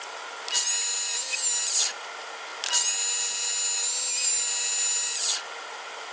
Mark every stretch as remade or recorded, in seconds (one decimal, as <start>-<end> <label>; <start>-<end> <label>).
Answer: 0.0-6.1 recorded